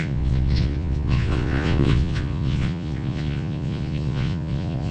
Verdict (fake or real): fake